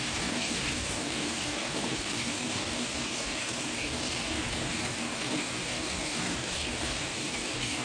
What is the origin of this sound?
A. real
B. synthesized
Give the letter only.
B